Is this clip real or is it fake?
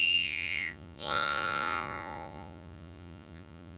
fake